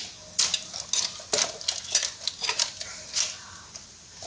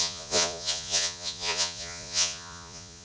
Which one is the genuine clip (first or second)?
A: first